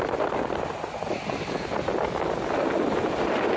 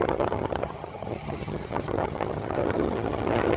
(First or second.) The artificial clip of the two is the second